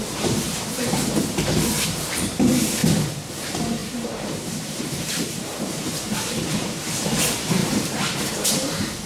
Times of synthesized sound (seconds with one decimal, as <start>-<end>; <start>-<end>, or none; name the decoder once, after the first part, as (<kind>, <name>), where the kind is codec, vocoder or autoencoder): 0.0-2.8 (vocoder, BigVGAN v2); 3.3-9.1